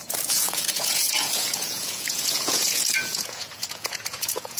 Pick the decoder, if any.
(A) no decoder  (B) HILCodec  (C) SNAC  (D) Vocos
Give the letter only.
D